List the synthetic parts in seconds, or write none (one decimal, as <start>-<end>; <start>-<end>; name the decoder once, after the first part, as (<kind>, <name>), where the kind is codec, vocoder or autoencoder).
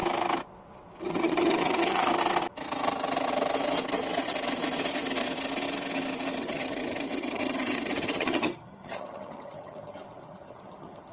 1.0-2.1 (vocoder, HiFi-GAN); 6.4-11.1